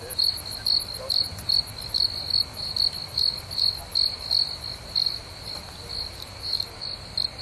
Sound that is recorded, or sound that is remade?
recorded